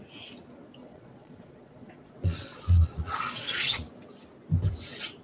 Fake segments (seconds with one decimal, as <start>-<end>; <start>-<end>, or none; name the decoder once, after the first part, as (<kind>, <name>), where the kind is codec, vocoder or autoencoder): 0.8-3.9 (vocoder, Vocos)